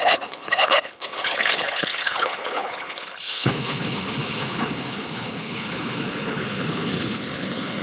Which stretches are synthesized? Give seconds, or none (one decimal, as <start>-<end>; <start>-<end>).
0.0-7.8